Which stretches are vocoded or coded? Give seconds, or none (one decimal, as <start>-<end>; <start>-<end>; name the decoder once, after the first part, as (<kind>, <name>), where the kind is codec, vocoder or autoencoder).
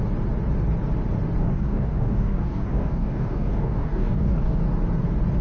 1.4-4.6 (codec, DAC)